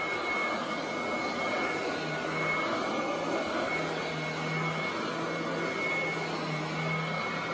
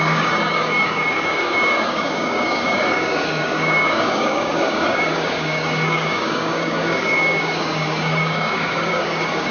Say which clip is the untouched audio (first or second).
first